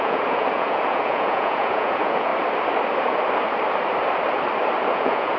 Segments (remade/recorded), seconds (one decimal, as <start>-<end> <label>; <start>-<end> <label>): 0.0-2.3 remade; 2.3-4.9 recorded; 4.9-5.4 remade